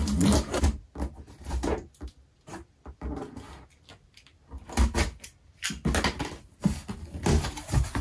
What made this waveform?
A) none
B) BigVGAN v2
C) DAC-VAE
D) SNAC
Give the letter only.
A